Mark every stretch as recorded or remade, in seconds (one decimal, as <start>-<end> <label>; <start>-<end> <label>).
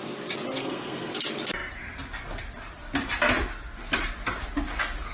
0.0-0.6 recorded; 0.6-1.1 remade; 1.1-5.1 recorded